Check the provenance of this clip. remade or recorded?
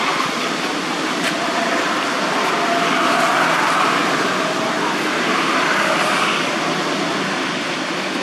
recorded